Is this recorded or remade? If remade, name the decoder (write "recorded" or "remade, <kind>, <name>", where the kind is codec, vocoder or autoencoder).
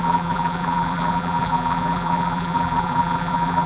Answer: remade, vocoder, BigVGAN v2